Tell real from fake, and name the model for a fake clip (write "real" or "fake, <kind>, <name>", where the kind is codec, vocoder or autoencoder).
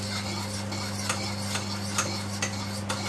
real